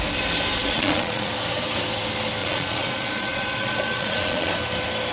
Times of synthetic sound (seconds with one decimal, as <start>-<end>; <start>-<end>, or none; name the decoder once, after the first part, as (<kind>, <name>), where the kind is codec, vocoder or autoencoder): 0.5-1.3 (vocoder, Vocos); 2.4-4.5